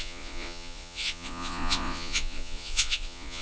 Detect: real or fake fake